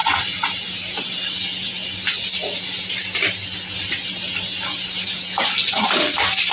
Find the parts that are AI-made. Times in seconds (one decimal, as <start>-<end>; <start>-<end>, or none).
none